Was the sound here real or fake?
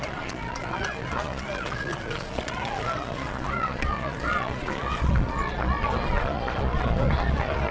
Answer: fake